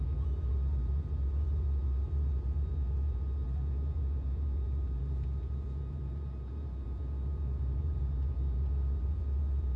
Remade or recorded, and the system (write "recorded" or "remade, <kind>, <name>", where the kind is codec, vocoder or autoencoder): remade, vocoder, Vocos